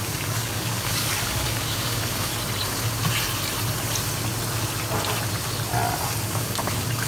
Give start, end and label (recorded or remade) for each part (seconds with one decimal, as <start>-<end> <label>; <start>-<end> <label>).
0.0-2.3 remade; 2.3-6.3 recorded; 6.3-7.1 remade